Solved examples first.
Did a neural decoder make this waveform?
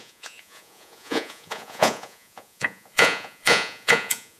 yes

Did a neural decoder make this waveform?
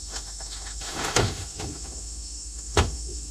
yes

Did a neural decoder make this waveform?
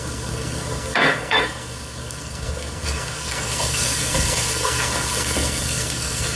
yes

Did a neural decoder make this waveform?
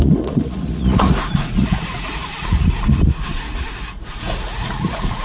yes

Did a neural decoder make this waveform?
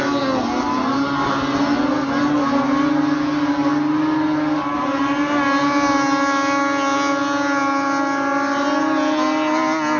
no